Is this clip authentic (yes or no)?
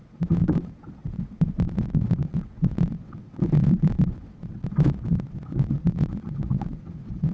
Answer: no